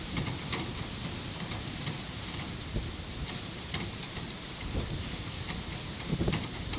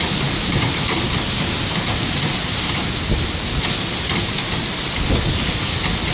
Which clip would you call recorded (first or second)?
second